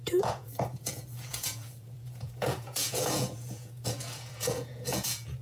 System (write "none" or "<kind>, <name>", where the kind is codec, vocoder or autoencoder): vocoder, Vocos